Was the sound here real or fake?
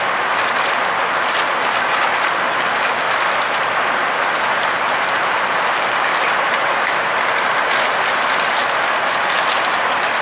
real